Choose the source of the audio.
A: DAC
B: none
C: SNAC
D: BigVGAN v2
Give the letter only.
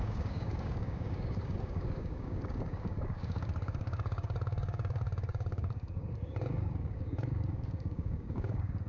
A